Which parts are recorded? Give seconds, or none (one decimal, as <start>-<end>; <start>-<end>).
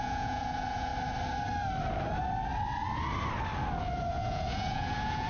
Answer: 0.9-4.1